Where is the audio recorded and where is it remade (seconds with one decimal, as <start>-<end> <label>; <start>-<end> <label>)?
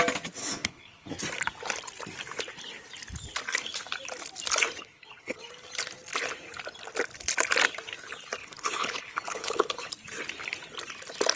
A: 0.0-0.4 recorded; 0.4-1.1 remade; 1.1-4.8 recorded; 4.8-5.4 remade; 5.4-8.4 recorded; 8.4-9.9 remade; 9.9-11.4 recorded